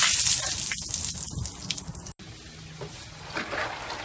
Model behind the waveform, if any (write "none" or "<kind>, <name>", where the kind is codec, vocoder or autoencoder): none